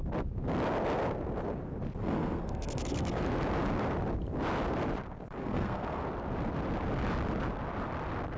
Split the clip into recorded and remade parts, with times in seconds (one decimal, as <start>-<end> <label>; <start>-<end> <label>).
0.0-2.0 recorded; 2.0-3.2 remade; 3.2-5.4 recorded; 5.4-6.0 remade; 6.0-8.4 recorded